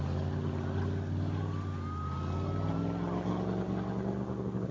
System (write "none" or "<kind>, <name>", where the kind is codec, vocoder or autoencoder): none